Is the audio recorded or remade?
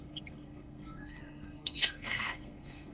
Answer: remade